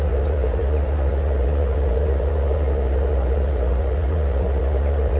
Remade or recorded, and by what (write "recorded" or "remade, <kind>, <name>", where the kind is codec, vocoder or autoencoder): remade, vocoder, Vocos